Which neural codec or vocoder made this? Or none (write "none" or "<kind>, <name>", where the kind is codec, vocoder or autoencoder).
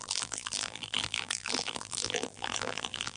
vocoder, BigVGAN v2